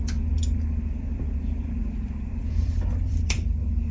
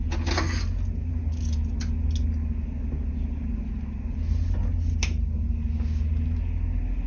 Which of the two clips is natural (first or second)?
second